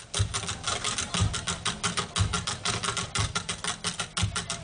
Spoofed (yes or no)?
no